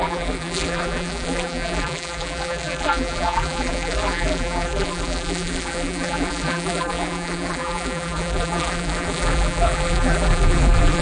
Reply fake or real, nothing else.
fake